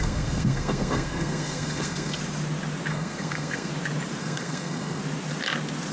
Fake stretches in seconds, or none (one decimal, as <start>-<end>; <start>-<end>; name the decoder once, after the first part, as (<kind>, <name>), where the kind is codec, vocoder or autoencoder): 0.0-2.2 (codec, SNAC); 2.9-3.7; 4.2-5.0